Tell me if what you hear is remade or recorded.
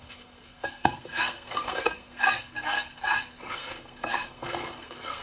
remade